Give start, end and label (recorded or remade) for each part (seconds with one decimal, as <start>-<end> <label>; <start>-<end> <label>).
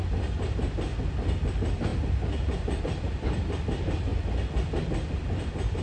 0.0-0.9 remade; 0.9-1.5 recorded; 1.5-4.1 remade; 4.1-4.8 recorded; 4.8-5.8 remade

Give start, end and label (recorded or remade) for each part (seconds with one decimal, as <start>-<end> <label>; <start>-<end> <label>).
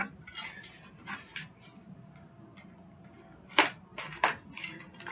0.0-5.1 recorded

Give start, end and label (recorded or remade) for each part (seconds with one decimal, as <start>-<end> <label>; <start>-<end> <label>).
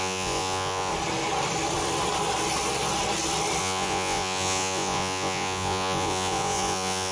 0.0-0.9 remade; 0.9-3.6 recorded; 3.6-7.1 remade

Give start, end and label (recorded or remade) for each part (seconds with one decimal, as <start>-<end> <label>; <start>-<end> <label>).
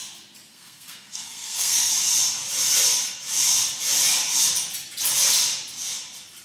0.0-0.5 recorded; 0.5-1.9 remade; 1.9-6.4 recorded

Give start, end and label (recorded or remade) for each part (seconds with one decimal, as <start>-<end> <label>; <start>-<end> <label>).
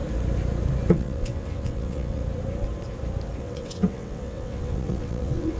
0.0-0.9 recorded; 0.9-2.2 remade; 2.2-3.4 recorded; 3.4-5.6 remade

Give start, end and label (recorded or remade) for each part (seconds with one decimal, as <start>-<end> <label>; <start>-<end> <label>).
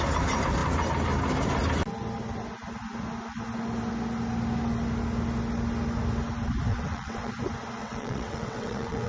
0.0-6.7 recorded; 6.7-7.3 remade; 7.3-7.8 recorded; 7.8-9.1 remade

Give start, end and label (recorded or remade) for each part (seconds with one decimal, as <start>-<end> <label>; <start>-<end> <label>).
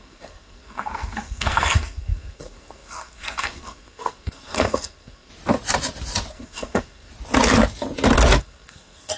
0.0-5.3 remade; 5.3-6.3 recorded; 6.3-7.1 remade; 7.1-8.4 recorded; 8.4-9.2 remade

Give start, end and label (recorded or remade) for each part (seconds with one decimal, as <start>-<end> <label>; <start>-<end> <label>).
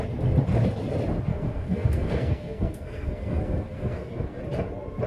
0.0-1.3 recorded; 1.3-4.4 remade; 4.4-5.1 recorded